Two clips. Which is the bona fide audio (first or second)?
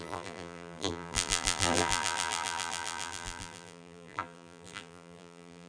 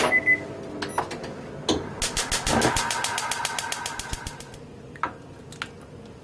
second